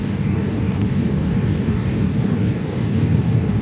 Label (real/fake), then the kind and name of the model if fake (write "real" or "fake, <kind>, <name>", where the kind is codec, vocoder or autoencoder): fake, codec, DAC